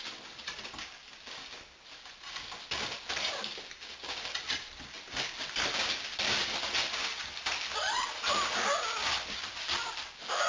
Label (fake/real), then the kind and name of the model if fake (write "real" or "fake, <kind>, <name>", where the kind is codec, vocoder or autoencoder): real